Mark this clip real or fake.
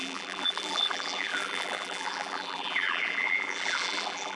fake